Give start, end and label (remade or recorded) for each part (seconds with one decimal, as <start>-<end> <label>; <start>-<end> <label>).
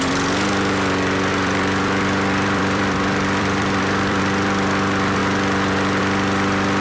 0.0-1.3 recorded; 1.3-4.2 remade; 4.2-6.8 recorded